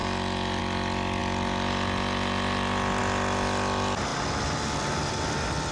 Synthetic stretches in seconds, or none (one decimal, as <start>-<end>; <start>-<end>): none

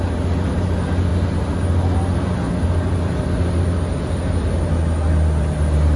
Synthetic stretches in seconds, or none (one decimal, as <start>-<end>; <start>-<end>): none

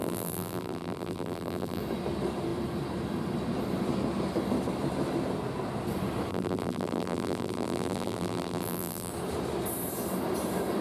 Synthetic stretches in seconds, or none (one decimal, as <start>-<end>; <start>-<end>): 0.0-1.8; 6.3-9.1

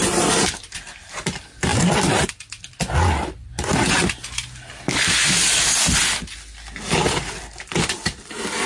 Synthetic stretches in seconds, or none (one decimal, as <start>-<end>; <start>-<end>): none